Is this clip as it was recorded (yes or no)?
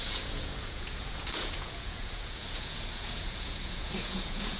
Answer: no